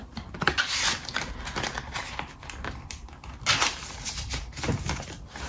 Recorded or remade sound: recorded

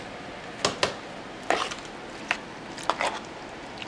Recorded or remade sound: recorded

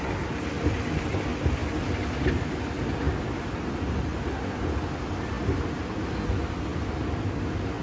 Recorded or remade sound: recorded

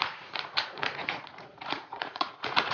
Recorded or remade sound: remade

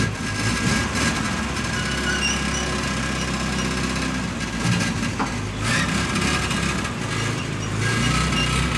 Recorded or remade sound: recorded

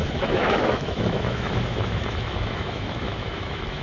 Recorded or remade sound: remade